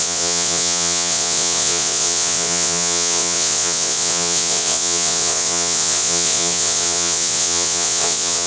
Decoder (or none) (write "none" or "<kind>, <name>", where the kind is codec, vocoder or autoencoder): vocoder, Vocos